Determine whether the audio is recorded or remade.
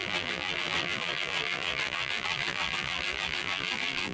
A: remade